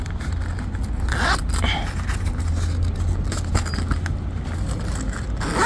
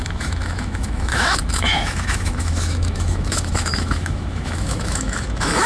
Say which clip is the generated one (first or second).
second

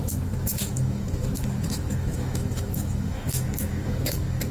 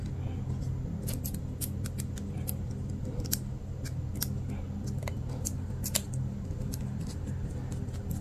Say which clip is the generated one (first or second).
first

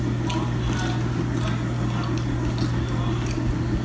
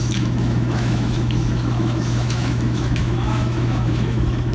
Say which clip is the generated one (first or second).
second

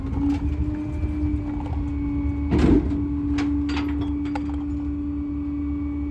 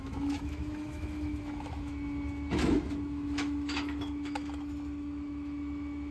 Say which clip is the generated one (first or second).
second